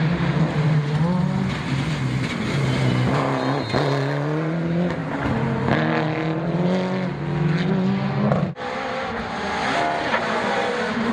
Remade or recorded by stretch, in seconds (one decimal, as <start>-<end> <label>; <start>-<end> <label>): 0.0-11.1 recorded